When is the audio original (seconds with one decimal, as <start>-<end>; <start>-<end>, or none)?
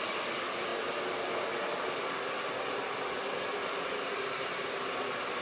0.0-5.4